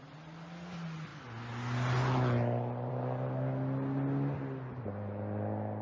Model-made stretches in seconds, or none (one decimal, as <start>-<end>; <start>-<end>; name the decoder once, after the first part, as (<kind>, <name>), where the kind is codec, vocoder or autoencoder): none